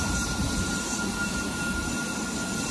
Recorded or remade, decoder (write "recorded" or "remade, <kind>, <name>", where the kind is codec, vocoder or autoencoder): recorded